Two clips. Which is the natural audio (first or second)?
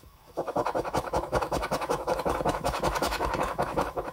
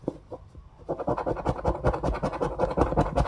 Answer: second